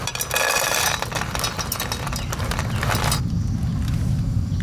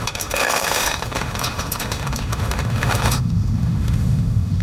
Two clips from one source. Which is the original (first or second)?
first